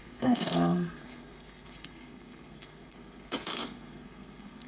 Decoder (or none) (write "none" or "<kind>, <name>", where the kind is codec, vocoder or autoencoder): codec, SNAC